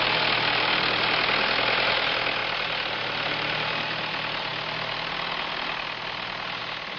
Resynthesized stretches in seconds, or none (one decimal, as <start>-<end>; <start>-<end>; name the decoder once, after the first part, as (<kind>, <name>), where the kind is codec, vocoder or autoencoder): none